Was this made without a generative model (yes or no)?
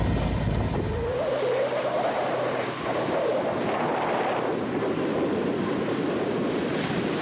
yes